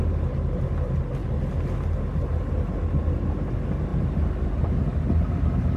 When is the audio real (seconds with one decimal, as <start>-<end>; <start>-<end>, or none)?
0.0-5.8